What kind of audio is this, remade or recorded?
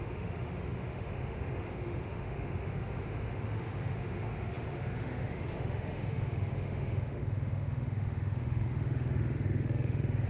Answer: remade